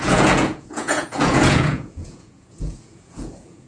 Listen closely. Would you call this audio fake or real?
fake